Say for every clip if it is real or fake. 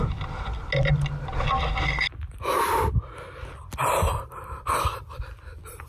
real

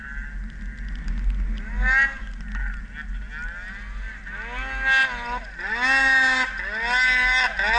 real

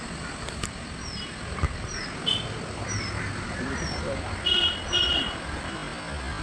real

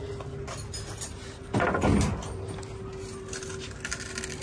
real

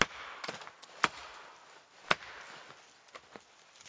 real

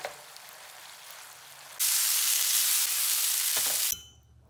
real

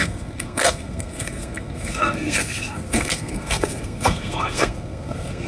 fake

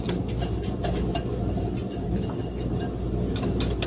real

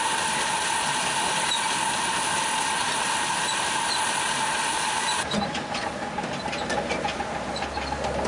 real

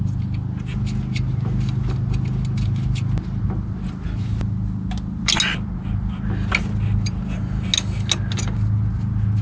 real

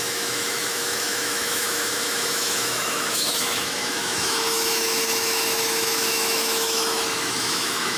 fake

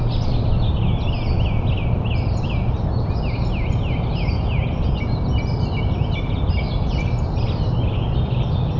real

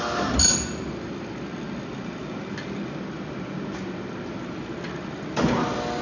real